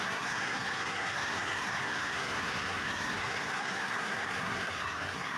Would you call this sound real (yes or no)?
no